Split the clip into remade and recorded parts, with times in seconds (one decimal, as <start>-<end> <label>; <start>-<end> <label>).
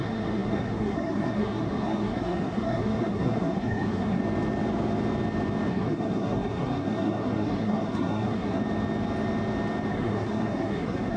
0.0-4.2 remade; 4.2-5.7 recorded; 5.7-8.6 remade; 8.6-9.9 recorded; 9.9-11.2 remade